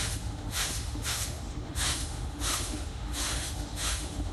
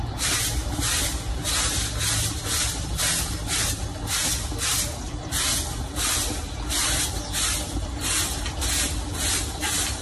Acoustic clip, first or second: second